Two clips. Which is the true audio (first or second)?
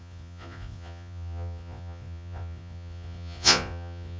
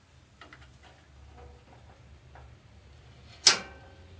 second